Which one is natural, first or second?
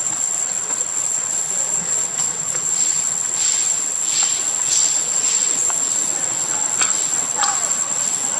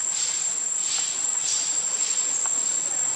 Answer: second